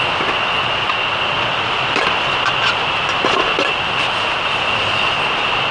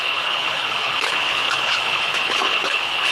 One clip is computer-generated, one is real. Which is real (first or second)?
first